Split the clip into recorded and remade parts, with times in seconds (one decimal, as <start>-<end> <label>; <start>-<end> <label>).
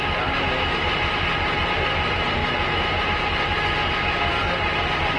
0.0-2.4 recorded; 2.4-3.0 remade; 3.0-5.2 recorded